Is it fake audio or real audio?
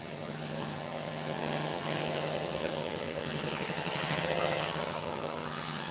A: fake